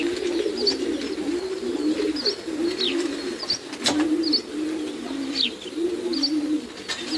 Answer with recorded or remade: recorded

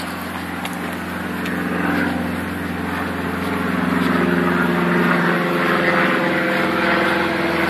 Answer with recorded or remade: recorded